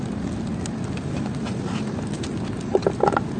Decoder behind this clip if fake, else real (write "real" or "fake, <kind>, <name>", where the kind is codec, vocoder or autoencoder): real